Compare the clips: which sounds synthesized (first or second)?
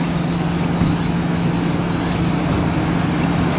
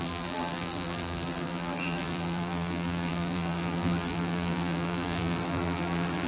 second